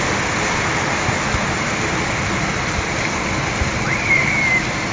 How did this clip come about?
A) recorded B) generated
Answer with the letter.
A